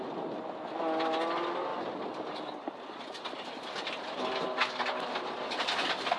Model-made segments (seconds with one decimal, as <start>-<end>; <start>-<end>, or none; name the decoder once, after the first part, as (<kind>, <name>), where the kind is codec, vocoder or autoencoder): none